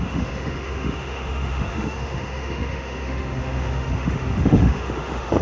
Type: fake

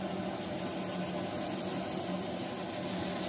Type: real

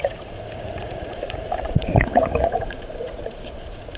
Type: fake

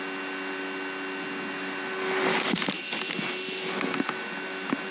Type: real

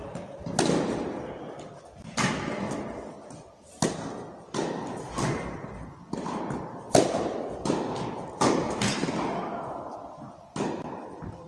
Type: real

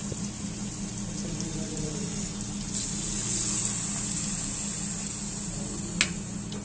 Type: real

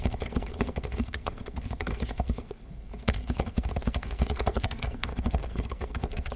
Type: fake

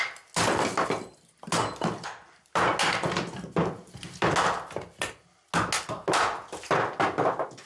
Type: real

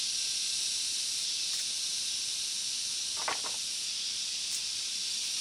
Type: real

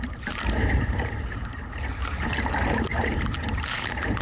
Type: fake